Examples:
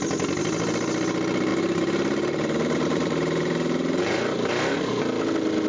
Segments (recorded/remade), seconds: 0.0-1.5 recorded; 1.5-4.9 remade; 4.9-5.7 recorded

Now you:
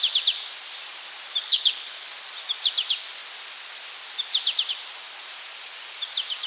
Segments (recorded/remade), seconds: 0.0-1.4 recorded; 1.4-2.1 remade; 2.1-6.5 recorded

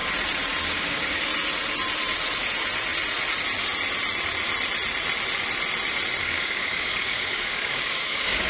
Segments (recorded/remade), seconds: 0.0-0.8 recorded; 0.8-1.3 remade; 1.3-6.2 recorded; 6.2-8.5 remade